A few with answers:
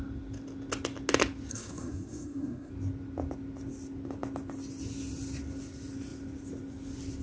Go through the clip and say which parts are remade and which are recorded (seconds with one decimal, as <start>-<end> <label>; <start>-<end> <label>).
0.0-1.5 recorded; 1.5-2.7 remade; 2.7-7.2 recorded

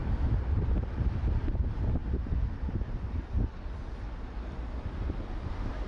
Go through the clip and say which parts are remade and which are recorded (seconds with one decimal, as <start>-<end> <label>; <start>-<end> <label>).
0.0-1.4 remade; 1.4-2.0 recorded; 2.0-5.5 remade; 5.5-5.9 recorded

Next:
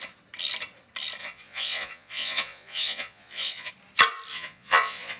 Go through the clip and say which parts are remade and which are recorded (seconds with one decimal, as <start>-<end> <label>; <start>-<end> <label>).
0.0-1.2 recorded; 1.2-3.7 remade; 3.7-4.3 recorded; 4.3-5.2 remade

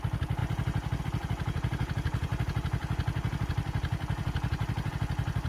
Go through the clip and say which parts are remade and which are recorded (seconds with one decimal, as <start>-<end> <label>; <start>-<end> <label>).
0.0-5.5 recorded

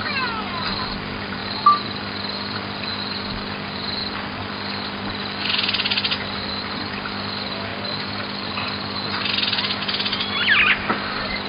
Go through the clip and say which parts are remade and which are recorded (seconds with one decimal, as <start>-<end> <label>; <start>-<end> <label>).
0.0-7.7 recorded; 7.7-8.5 remade; 8.5-11.5 recorded